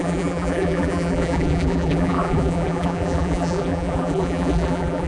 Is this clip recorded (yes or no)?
no